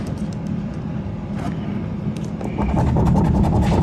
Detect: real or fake real